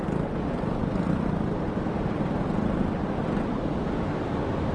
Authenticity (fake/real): real